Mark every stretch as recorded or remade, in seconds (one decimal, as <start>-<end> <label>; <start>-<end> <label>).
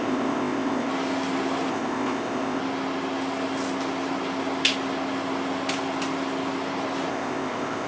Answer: 0.0-0.9 remade; 0.9-1.7 recorded; 1.7-2.6 remade; 2.6-7.1 recorded; 7.1-7.9 remade